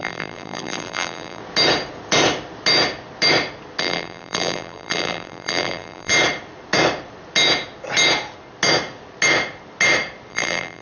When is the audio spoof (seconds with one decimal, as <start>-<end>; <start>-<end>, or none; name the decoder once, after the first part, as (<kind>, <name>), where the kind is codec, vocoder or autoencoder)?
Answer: 0.0-1.4 (vocoder, BigVGAN v2); 3.8-6.1; 10.3-10.8